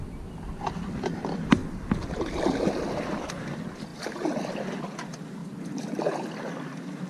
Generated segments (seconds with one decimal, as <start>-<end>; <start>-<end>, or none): 5.4-6.0